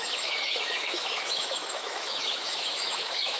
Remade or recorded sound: remade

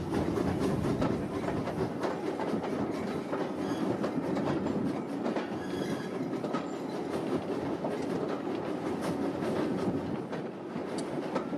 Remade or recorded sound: recorded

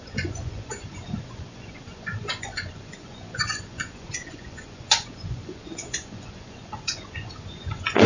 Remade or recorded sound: remade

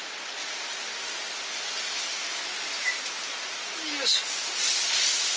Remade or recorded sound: recorded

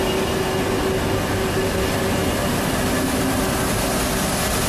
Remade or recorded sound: recorded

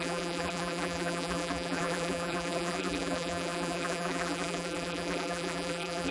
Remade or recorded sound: remade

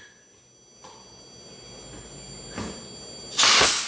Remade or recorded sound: recorded